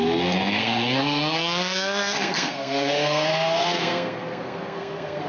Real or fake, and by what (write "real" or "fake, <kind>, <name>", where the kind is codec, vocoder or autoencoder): fake, codec, SNAC